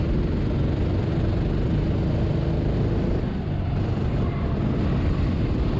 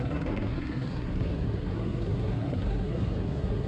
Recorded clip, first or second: first